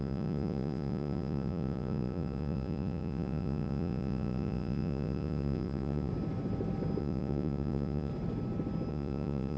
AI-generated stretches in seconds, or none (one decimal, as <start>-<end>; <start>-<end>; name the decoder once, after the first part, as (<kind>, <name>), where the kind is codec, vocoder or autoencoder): 0.0-6.1 (vocoder, Vocos); 7.0-8.1; 8.9-9.6